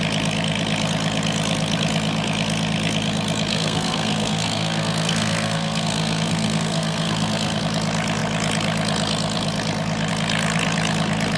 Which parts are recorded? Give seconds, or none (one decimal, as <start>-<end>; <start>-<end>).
0.0-3.5; 7.6-11.4